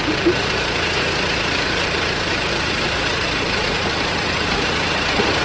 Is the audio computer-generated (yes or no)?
yes